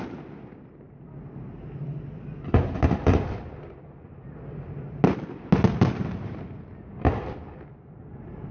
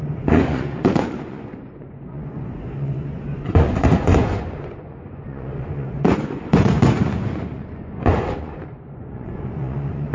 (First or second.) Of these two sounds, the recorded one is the first